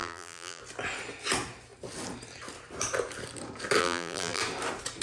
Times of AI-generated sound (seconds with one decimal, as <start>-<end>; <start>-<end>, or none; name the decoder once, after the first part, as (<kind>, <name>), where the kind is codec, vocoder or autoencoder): 0.0-0.6 (vocoder, BigVGAN v2); 3.8-4.4